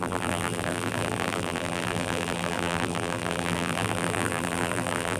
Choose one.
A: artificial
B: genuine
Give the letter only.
A